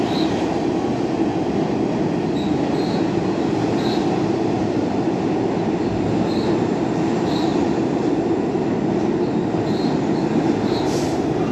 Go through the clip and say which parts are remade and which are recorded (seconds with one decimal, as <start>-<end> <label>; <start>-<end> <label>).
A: 0.0-4.6 recorded; 4.6-6.4 remade; 6.4-7.5 recorded; 7.5-9.4 remade; 9.4-11.5 recorded